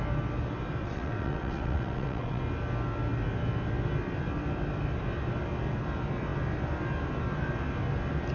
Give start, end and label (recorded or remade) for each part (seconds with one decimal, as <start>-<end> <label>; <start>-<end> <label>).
0.0-0.8 recorded; 0.8-2.4 remade; 2.4-8.3 recorded